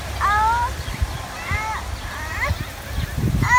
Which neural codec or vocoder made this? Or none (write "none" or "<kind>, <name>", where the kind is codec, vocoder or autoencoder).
none